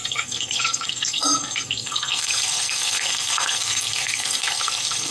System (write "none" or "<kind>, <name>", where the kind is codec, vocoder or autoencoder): codec, SNAC